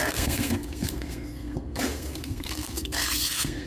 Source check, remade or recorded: remade